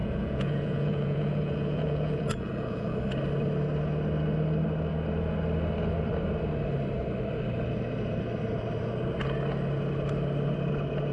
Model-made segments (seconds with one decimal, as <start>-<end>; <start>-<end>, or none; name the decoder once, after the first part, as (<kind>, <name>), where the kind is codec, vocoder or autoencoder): 0.0-3.0 (vocoder, Vocos)

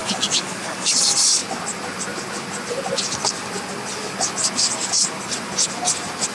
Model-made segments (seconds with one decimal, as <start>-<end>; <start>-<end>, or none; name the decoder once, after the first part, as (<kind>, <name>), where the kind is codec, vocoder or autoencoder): 0.0-0.9 (codec, DAC)